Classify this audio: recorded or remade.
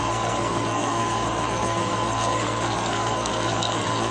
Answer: remade